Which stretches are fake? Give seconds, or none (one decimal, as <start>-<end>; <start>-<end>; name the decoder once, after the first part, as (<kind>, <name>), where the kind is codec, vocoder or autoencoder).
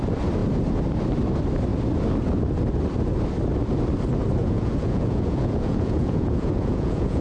4.4-7.2 (vocoder, Vocos)